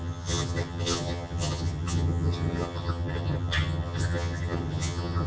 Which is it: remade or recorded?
remade